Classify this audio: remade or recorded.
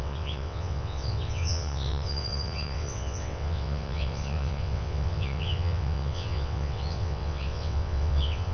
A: remade